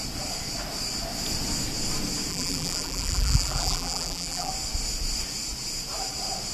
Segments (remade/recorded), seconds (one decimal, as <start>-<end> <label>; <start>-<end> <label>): 0.0-2.3 recorded; 2.3-4.5 remade; 4.5-6.5 recorded